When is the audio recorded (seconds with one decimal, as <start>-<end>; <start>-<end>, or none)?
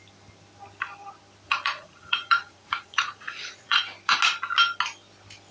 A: 0.0-1.5; 3.8-5.5